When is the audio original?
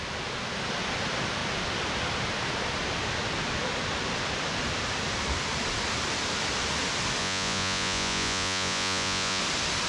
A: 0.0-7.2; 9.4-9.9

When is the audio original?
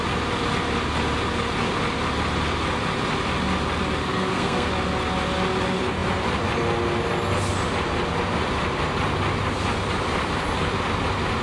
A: 0.0-4.0; 4.7-11.4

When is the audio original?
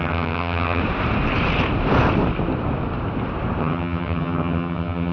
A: 0.8-3.6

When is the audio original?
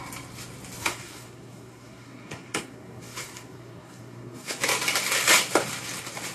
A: 0.0-0.8; 4.6-6.3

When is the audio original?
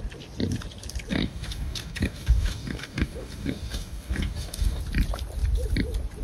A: 0.0-1.1; 4.8-6.2